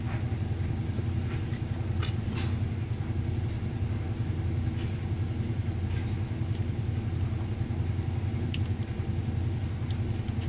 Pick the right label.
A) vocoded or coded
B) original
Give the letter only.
B